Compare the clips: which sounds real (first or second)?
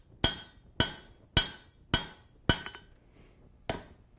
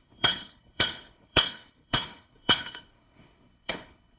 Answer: first